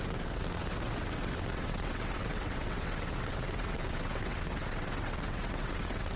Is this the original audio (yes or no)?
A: no